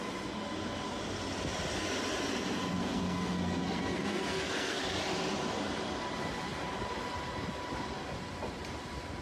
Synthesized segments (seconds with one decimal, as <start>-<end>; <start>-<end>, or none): 2.7-4.8